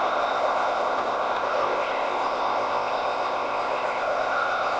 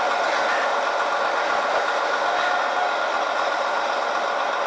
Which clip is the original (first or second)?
second